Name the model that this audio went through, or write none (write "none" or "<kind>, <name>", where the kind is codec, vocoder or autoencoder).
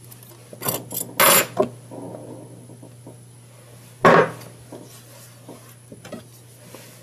none